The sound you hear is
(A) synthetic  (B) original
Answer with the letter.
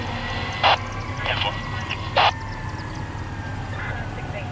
B